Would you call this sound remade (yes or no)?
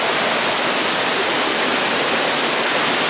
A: no